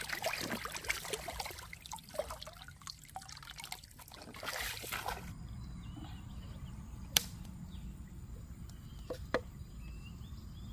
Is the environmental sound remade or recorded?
remade